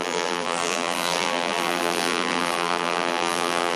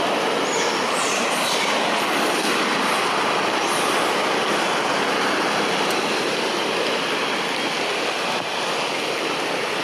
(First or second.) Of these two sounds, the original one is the second